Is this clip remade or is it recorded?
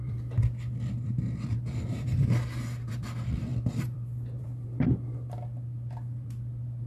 remade